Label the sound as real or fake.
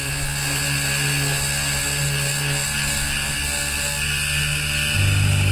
real